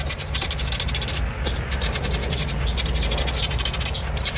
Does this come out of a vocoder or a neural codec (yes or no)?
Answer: no